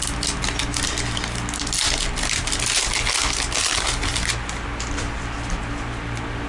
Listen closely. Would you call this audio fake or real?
real